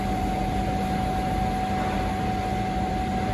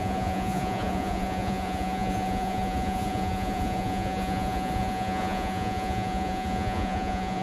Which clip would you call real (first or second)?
first